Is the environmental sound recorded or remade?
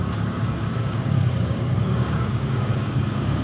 remade